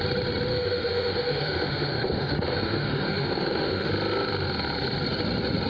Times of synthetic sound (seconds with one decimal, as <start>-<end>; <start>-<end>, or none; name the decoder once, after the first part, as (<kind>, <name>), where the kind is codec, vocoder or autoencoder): 0.5-3.9 (autoencoder, DAC-VAE)

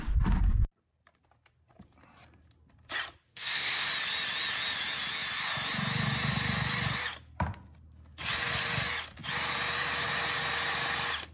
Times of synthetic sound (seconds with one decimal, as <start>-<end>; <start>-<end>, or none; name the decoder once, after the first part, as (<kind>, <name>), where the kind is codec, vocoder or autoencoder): 3.3-3.9 (codec, SNAC)

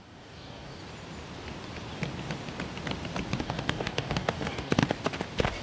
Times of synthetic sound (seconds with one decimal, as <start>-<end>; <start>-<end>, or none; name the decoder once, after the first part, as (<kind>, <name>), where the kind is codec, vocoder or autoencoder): 0.0-0.8 (codec, DAC); 3.4-4.8